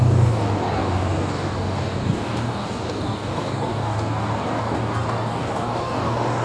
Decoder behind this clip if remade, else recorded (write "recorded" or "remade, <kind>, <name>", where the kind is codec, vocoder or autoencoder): remade, codec, DAC